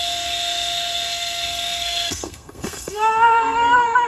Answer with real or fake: fake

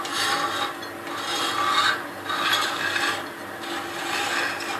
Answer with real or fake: real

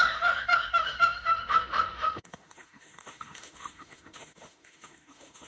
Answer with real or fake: fake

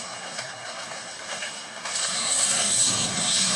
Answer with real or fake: fake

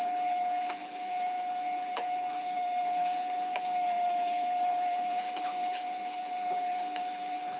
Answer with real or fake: fake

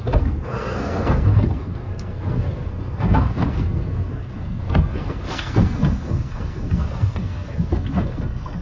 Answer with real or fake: fake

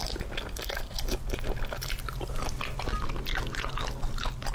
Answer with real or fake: real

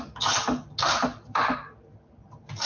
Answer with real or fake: real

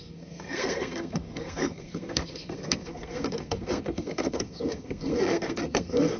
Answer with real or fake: fake